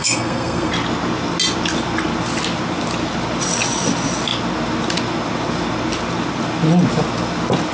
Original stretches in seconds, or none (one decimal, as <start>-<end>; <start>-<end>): 0.7-7.7